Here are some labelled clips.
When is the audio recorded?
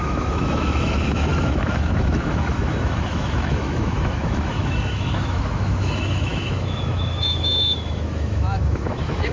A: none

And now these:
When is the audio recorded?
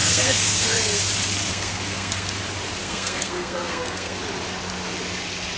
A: 1.0-1.5; 2.4-2.8; 4.2-5.6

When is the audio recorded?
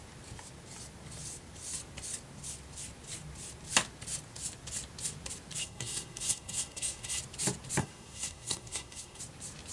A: 0.0-5.6; 7.2-7.8; 9.2-9.7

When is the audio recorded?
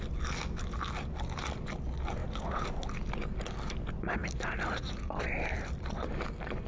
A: 0.0-4.2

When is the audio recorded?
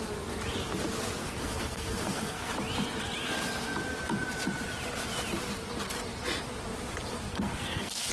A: 0.0-1.2; 2.5-7.3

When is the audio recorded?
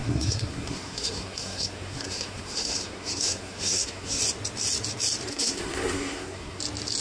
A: 4.2-5.3; 6.6-7.0